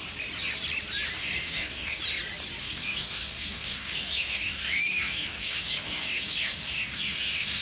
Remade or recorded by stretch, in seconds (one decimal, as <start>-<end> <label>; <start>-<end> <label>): 0.0-1.2 recorded; 1.2-2.0 remade; 2.0-2.6 recorded; 2.6-7.6 remade